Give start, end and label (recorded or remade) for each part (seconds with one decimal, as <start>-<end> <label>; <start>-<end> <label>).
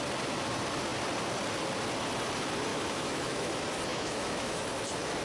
0.0-2.7 recorded; 2.7-3.5 remade; 3.5-3.9 recorded; 3.9-4.7 remade; 4.7-5.2 recorded